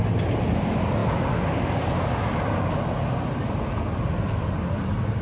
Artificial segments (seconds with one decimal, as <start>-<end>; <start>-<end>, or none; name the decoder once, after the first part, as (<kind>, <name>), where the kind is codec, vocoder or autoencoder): none